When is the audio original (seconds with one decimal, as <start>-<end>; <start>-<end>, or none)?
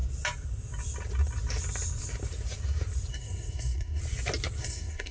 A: 0.0-3.1; 4.0-4.6